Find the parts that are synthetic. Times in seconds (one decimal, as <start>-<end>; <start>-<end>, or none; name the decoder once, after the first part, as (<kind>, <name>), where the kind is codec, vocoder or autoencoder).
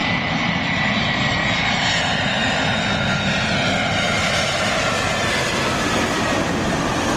0.0-0.7 (vocoder, BigVGAN v2); 4.2-6.5